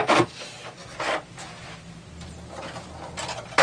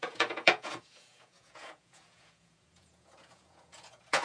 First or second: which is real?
first